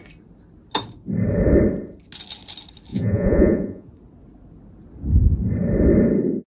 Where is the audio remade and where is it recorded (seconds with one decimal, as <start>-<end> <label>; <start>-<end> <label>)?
0.0-2.9 recorded; 2.9-3.9 remade; 3.9-6.5 recorded